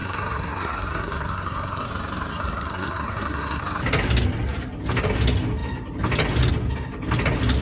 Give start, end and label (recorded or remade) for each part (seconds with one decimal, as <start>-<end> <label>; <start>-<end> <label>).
0.0-1.9 remade; 1.9-2.3 recorded; 2.3-3.6 remade; 3.6-7.6 recorded